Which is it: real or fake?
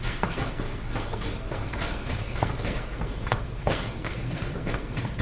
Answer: fake